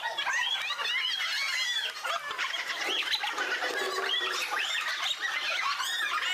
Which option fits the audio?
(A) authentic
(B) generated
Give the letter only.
A